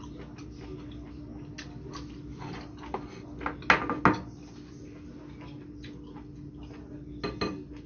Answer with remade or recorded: recorded